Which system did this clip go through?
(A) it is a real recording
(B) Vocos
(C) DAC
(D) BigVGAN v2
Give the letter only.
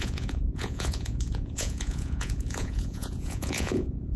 B